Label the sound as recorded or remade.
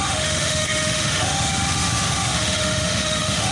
remade